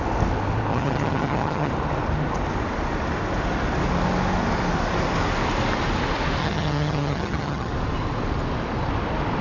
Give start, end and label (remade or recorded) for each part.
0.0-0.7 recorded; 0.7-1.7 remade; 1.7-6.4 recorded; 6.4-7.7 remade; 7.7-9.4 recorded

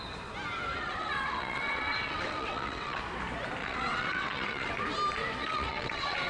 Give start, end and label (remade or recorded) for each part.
0.0-0.7 recorded; 0.7-3.0 remade; 3.0-3.6 recorded; 3.6-4.7 remade; 4.7-5.4 recorded; 5.4-6.3 remade